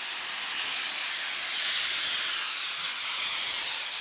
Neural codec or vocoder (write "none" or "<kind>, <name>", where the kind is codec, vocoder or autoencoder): vocoder, BigVGAN v2